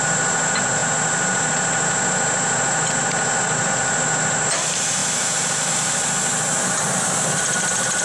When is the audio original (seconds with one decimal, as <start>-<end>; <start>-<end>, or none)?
0.0-8.0